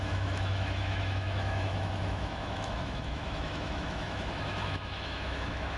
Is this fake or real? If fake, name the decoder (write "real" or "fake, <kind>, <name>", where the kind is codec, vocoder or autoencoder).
fake, autoencoder, DAC-VAE